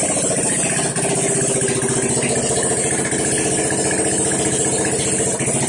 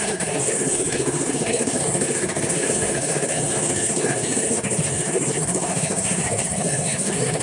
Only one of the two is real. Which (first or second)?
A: first